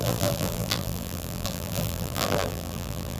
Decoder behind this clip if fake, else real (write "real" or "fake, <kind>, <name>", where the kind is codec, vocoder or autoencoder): fake, vocoder, BigVGAN v2